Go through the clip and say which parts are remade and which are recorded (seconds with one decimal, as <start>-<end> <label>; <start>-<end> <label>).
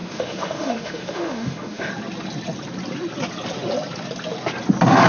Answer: 0.0-1.9 remade; 1.9-5.1 recorded